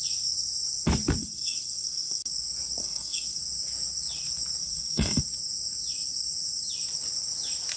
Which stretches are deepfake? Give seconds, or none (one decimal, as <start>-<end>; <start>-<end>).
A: 1.2-2.3; 2.8-3.4; 4.6-5.2